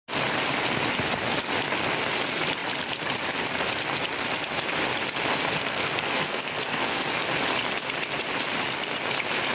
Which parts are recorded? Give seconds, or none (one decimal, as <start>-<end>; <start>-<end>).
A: 0.0-5.6; 7.0-9.5